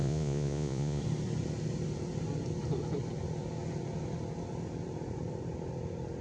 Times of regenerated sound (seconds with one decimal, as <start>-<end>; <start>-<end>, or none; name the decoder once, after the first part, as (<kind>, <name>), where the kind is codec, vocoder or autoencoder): 0.0-1.0 (vocoder, Vocos)

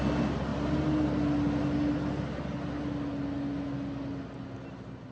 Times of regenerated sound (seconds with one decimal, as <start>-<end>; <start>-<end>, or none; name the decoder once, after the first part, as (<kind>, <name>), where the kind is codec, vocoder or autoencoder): none